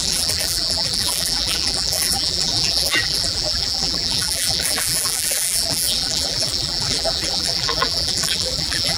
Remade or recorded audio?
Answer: remade